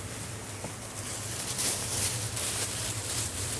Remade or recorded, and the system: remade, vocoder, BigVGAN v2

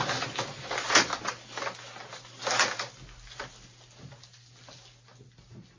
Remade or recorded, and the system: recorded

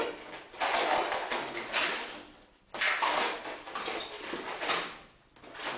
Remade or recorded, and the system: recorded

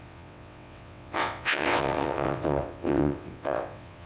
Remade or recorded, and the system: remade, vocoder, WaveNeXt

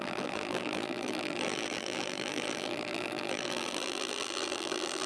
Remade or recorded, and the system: remade, vocoder, BigVGAN v2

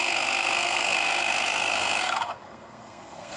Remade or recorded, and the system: remade, codec, SNAC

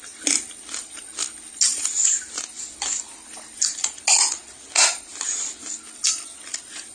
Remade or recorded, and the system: recorded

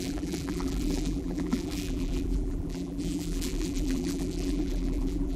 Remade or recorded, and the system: remade, vocoder, BigVGAN v2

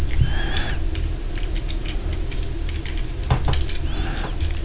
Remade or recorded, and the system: recorded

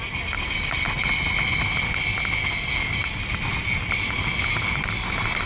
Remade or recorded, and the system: recorded